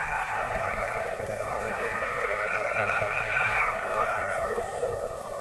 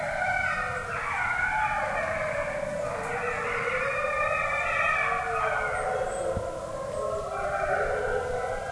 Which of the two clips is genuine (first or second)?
second